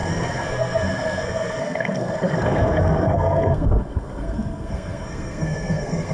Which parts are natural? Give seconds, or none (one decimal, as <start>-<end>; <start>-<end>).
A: none